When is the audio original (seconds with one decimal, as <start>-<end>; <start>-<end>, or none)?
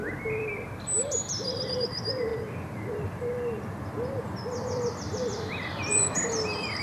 0.0-1.0